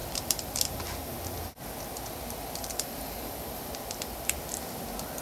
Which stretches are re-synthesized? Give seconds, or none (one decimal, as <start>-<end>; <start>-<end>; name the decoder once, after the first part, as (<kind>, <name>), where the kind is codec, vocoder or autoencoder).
0.0-0.6 (vocoder, BigVGAN v2); 2.6-4.8